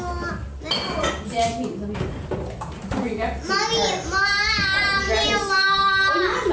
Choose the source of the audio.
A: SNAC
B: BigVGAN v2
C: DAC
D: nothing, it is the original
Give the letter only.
D